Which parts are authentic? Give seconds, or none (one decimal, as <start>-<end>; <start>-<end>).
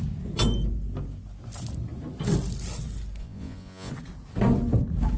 0.0-3.2; 3.9-5.2